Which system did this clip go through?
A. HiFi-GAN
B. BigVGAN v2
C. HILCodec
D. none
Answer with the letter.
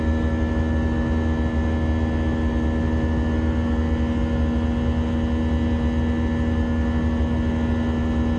D